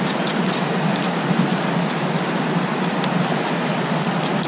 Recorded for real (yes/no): yes